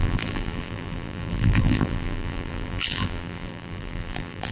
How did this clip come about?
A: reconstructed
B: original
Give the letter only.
A